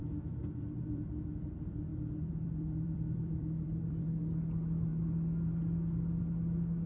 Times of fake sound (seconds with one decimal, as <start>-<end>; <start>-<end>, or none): 0.0-1.0; 1.9-4.1